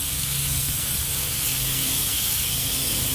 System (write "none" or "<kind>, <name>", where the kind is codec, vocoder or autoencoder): codec, SNAC